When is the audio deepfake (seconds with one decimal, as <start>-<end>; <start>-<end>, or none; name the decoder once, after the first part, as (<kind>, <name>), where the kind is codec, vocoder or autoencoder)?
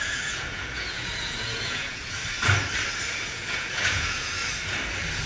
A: 0.0-2.2 (vocoder, Vocos); 3.2-4.4